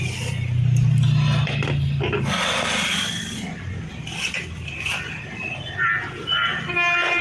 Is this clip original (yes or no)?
yes